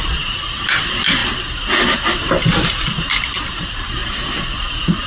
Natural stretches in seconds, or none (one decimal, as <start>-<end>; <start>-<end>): 0.0-5.1